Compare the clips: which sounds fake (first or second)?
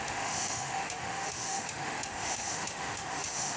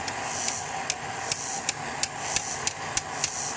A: first